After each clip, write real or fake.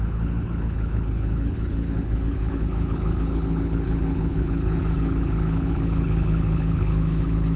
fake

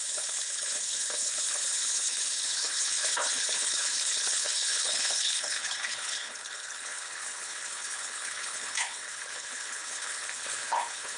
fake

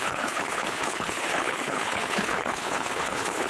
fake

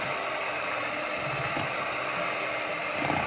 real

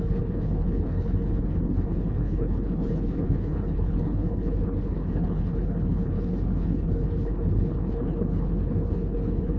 fake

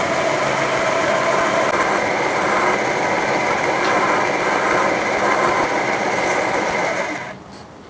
real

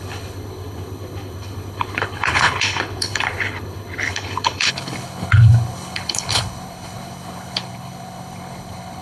fake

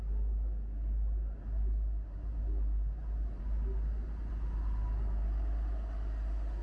real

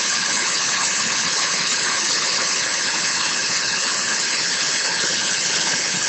fake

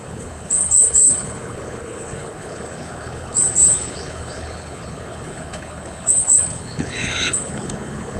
fake